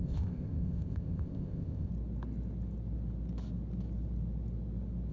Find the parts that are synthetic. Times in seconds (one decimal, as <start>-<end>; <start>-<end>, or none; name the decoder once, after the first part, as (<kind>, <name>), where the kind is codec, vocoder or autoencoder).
0.0-1.9 (codec, ZipCodec)